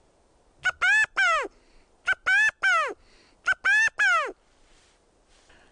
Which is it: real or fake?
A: real